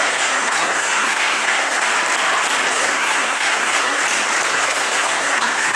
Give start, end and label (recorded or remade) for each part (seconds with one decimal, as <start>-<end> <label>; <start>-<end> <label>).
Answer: 0.0-1.9 remade; 1.9-2.7 recorded; 2.7-4.0 remade; 4.0-4.5 recorded; 4.5-5.8 remade